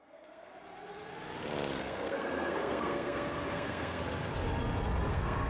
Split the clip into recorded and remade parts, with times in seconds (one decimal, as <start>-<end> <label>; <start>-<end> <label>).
0.0-0.5 remade; 0.5-1.8 recorded; 1.8-4.0 remade; 4.0-5.1 recorded; 5.1-5.5 remade